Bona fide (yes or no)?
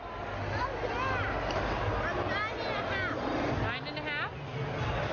yes